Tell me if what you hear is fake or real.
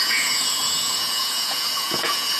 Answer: fake